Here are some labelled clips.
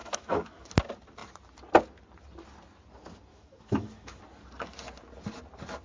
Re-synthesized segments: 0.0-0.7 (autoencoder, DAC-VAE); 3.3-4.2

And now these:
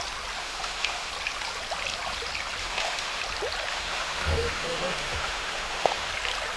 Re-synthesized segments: 0.4-1.1 (autoencoder, DAC-VAE); 2.6-3.2; 3.7-6.1

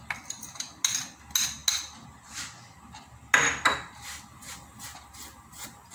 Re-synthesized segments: none

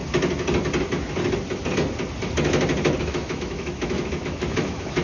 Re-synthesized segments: 3.0-5.0 (autoencoder, DAC-VAE)

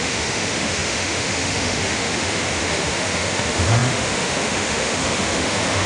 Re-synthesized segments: 0.0-5.9 (autoencoder, DAC-VAE)

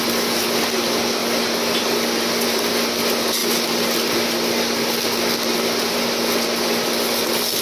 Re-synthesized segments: none

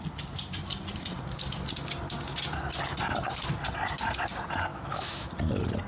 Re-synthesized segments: 4.7-5.3 (autoencoder, DAC-VAE)

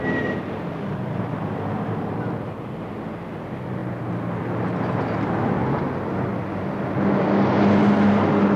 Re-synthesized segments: none